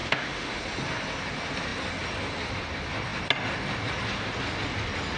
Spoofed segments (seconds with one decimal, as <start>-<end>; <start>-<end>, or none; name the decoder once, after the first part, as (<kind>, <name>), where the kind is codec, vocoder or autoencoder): 0.0-0.6 (autoencoder, DAC-VAE)